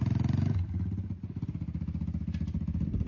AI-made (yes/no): no